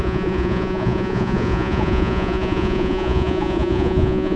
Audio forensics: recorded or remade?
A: remade